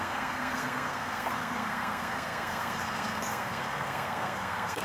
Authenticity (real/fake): fake